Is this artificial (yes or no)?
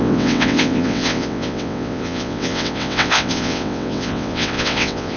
yes